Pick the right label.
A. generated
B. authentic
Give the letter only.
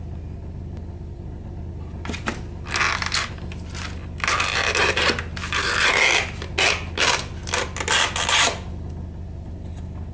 B